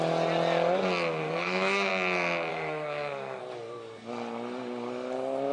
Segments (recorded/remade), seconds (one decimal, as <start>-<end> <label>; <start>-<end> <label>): 0.0-1.2 recorded; 1.2-1.9 remade; 1.9-2.5 recorded; 2.5-3.4 remade; 3.4-5.5 recorded